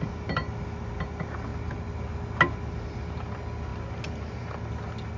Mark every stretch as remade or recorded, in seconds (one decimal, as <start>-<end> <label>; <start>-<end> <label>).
0.0-5.2 recorded